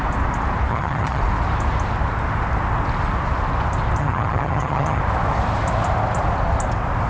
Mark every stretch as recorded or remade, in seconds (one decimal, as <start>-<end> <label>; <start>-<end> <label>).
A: 0.0-0.7 recorded; 0.7-1.2 remade; 1.2-4.0 recorded; 4.0-5.0 remade; 5.0-7.1 recorded